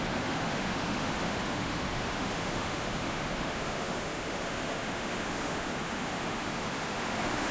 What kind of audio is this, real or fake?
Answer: fake